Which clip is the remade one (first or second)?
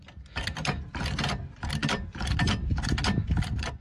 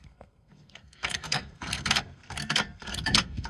second